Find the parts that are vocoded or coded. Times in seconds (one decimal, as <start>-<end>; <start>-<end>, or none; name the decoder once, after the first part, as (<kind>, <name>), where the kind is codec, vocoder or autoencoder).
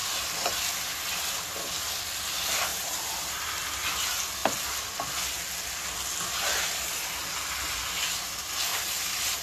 2.7-3.5 (vocoder, BigVGAN v2); 8.7-9.4